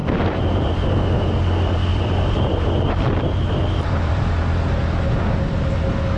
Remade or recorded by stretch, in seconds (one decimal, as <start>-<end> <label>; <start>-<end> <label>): 0.0-1.0 remade; 1.0-1.9 recorded; 1.9-4.2 remade; 4.2-6.2 recorded